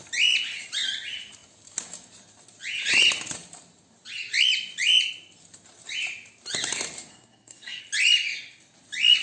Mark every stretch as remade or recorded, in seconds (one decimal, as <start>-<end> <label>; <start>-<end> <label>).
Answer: 0.0-7.1 recorded; 7.1-7.8 remade; 7.8-9.2 recorded